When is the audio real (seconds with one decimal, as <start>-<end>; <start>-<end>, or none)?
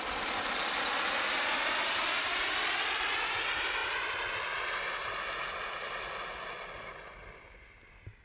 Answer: 0.0-8.2